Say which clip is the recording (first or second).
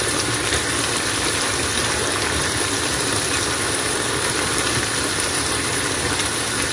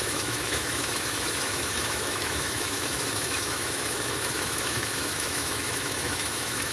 first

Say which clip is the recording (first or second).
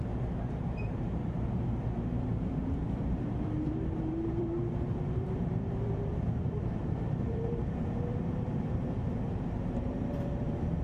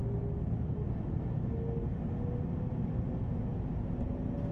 second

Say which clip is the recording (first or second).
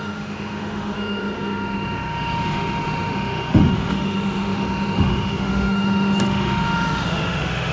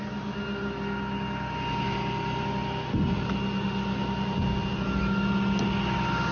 second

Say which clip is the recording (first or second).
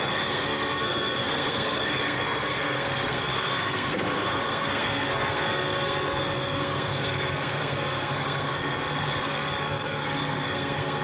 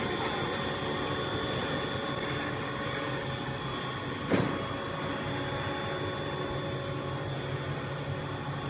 second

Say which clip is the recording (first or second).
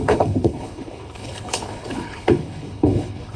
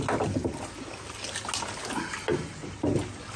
second